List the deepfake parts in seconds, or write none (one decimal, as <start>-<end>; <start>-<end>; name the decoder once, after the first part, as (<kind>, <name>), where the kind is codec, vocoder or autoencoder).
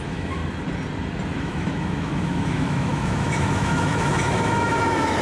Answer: 0.0-0.4 (autoencoder, DAC-VAE); 1.4-5.2